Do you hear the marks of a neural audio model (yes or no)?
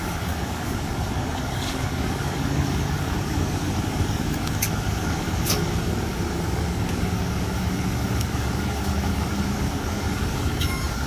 yes